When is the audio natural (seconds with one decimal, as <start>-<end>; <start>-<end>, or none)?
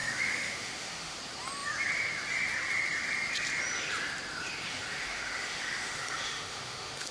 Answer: 1.2-4.7